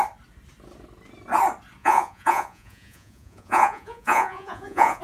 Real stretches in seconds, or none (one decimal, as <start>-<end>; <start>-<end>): 0.0-1.8